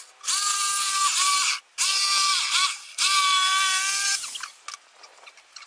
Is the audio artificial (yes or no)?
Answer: no